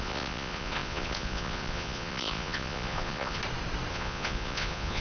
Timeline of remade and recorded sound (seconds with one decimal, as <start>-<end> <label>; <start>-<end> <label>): 0.0-3.4 remade; 3.4-3.9 recorded; 3.9-5.0 remade